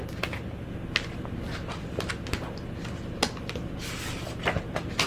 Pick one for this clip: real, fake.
real